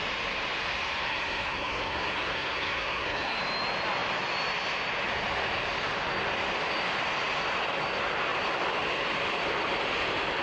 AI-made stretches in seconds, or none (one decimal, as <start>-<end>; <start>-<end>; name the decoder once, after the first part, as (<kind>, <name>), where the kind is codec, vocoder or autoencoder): 1.1-3.4 (codec, SNAC)

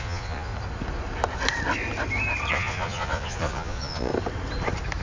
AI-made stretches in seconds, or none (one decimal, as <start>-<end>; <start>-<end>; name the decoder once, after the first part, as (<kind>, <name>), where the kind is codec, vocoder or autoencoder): 0.0-0.5 (vocoder, Vocos); 2.5-4.1